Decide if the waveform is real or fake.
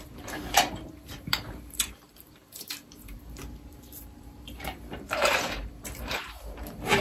fake